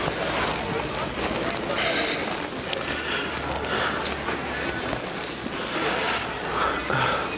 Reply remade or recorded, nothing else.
recorded